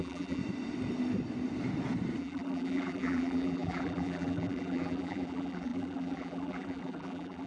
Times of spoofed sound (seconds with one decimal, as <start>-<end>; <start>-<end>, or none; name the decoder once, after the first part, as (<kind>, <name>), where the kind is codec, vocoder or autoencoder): 0.0-0.4 (vocoder, BigVGAN v2); 2.2-7.5